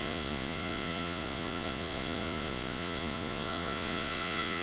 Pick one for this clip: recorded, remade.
remade